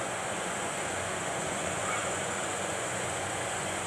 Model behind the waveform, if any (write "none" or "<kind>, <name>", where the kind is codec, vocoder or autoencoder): vocoder, Vocos